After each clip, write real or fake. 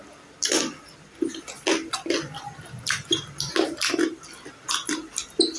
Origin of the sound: real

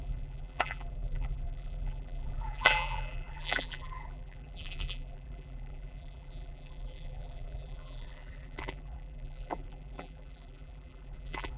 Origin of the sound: fake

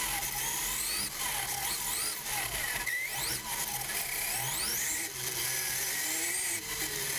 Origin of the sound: real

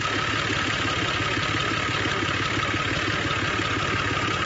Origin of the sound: fake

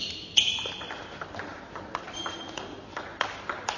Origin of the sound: fake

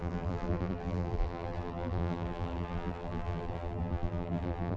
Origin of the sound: fake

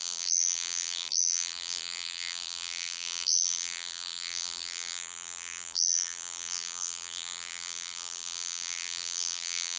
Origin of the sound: fake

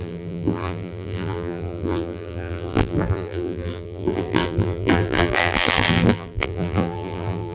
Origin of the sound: fake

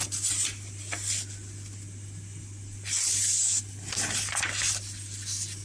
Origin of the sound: real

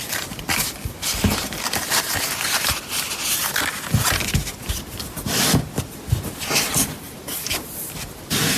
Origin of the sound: fake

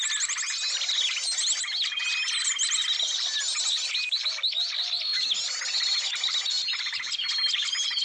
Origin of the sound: real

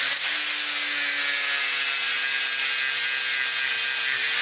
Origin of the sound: real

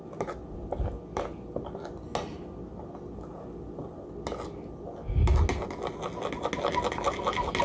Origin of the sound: real